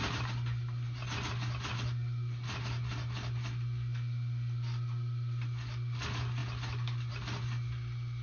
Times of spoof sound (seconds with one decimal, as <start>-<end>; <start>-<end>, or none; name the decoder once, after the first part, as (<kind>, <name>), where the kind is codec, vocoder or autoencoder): none